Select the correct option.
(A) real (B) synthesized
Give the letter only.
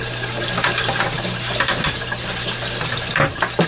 A